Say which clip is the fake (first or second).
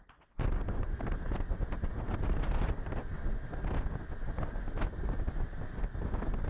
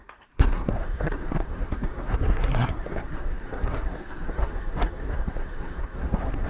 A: second